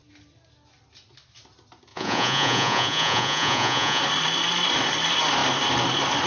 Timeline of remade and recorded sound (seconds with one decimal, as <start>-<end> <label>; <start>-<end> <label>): 0.0-1.9 recorded; 1.9-4.0 remade; 4.0-6.3 recorded